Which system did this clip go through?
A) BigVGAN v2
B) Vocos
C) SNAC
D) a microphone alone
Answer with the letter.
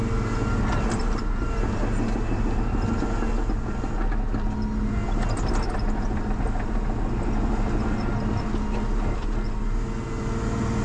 D